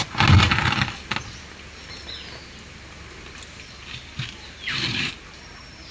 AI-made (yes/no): no